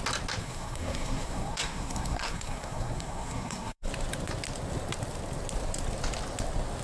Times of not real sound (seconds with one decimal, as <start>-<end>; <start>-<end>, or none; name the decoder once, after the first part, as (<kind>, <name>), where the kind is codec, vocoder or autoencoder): 0.4-3.9 (codec, SNAC)